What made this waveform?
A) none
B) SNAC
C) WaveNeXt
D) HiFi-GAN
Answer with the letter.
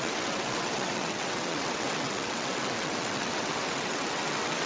C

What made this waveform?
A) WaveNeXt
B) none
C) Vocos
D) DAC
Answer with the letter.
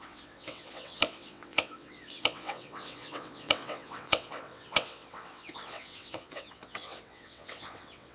A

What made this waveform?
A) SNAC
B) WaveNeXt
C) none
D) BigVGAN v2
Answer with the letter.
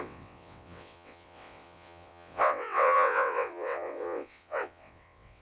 B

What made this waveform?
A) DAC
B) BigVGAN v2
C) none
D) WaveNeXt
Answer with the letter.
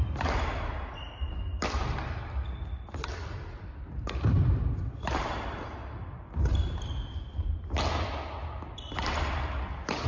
C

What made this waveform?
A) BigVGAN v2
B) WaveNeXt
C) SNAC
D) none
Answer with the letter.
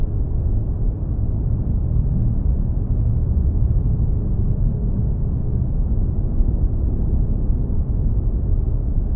D